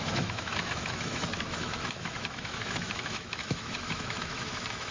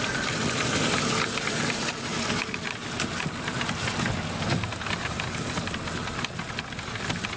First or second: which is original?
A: second